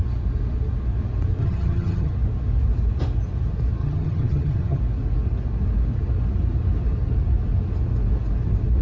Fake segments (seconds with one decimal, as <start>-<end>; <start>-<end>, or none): 1.4-2.1; 3.8-4.8